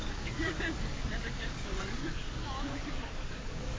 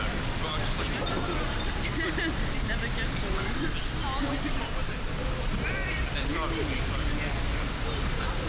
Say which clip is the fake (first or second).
first